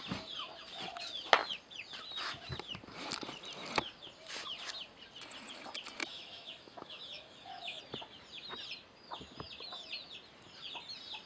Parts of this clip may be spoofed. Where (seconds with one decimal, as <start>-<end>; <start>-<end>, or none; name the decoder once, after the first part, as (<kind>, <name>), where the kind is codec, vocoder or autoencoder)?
6.0-7.8 (autoencoder, DAC-VAE)